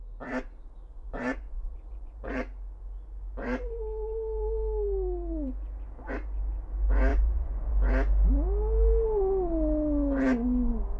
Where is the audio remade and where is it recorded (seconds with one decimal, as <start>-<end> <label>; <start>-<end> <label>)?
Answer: 0.0-0.9 recorded; 0.9-2.4 remade; 2.4-7.1 recorded; 7.1-7.7 remade; 7.7-11.0 recorded